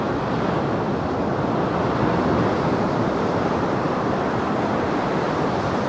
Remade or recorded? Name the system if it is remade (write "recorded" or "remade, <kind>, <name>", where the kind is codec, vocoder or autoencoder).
recorded